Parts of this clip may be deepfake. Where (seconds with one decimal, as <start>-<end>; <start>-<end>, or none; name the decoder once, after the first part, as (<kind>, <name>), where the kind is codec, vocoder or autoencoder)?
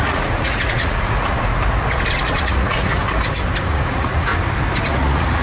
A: 0.0-1.5 (vocoder, Vocos); 2.1-3.0; 3.7-4.3; 4.9-5.4